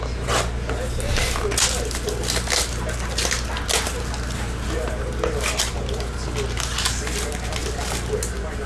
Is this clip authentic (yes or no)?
yes